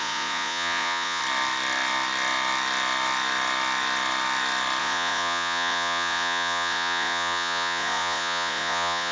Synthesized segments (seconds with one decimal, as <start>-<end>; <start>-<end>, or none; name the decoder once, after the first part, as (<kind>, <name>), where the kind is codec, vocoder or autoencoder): 0.0-1.2 (vocoder, Vocos); 4.8-9.1